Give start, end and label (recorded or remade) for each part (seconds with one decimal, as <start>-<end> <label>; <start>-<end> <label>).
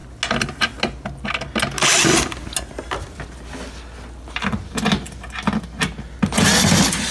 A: 0.0-7.1 recorded